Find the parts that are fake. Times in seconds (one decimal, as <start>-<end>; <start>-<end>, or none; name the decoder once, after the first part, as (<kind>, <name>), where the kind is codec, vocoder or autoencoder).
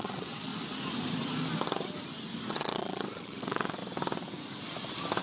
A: 0.0-0.5 (vocoder, WaveNeXt); 2.5-3.8